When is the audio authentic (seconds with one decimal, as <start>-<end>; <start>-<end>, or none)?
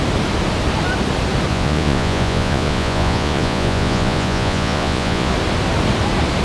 0.0-1.5; 5.3-6.4